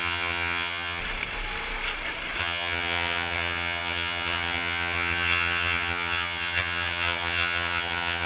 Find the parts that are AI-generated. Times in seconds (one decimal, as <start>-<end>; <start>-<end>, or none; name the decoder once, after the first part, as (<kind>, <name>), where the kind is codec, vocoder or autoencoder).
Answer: 0.0-1.0 (vocoder, HiFi-GAN); 2.4-8.3